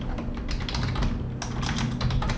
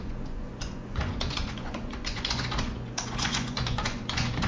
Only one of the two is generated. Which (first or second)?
second